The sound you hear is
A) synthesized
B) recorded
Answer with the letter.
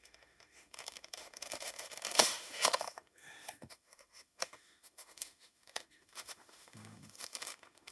A